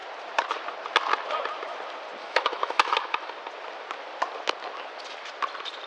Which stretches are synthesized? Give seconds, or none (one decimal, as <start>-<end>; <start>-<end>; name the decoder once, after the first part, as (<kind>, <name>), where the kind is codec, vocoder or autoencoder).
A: 2.2-3.3 (autoencoder, DAC-VAE)